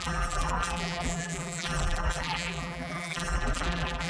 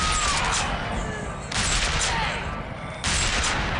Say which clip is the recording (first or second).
second